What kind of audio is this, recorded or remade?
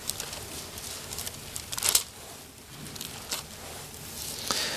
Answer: recorded